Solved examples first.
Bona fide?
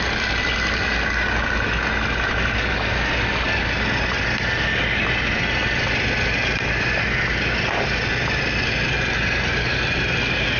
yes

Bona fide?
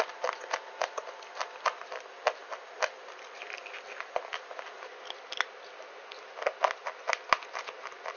yes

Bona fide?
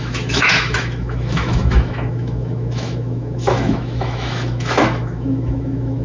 no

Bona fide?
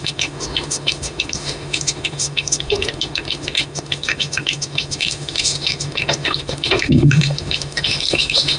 no